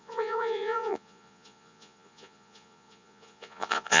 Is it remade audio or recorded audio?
remade